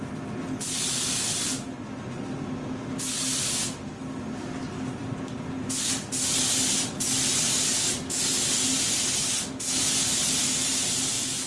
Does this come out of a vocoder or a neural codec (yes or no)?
no